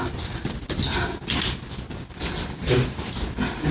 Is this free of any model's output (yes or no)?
yes